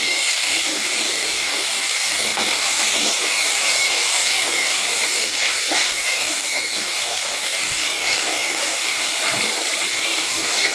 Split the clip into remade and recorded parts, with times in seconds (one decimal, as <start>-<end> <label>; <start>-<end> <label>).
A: 0.0-9.1 remade; 9.1-9.9 recorded; 9.9-10.7 remade